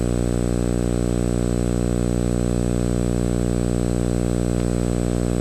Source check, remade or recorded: recorded